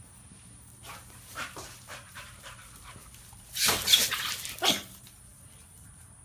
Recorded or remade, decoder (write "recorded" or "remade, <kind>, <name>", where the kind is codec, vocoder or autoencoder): remade, vocoder, BigVGAN v2